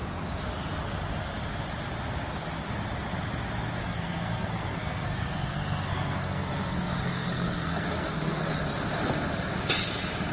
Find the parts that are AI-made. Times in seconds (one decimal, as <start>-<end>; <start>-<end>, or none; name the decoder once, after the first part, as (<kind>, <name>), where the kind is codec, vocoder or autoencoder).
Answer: 3.8-8.5 (codec, SNAC)